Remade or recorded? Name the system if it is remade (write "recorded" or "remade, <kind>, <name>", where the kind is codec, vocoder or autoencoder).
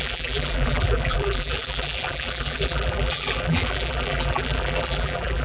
remade, vocoder, BigVGAN v2